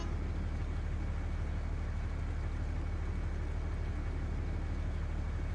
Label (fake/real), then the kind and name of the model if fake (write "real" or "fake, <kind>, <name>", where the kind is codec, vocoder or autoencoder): real